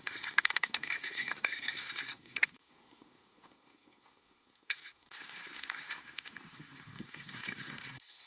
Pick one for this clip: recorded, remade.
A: remade